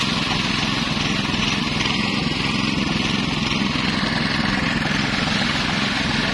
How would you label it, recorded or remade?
recorded